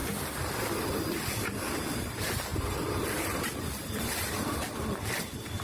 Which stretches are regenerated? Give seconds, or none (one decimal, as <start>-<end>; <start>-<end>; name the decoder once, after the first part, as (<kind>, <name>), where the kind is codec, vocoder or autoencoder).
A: 2.0-5.6 (vocoder, BigVGAN v2)